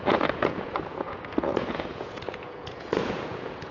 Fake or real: fake